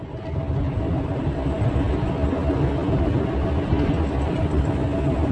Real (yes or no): yes